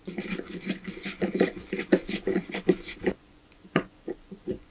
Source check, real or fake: fake